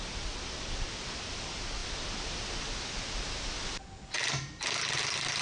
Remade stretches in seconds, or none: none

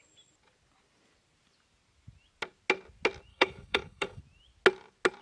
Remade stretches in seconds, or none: 3.3-4.2

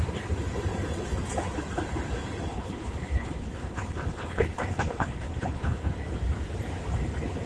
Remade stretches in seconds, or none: 2.5-5.9

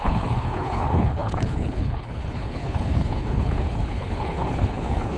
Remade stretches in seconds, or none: 0.0-5.2

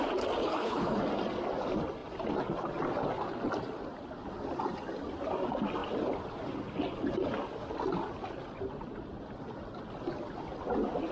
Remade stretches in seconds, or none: 0.4-1.0